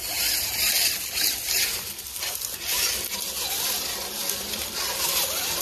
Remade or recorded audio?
recorded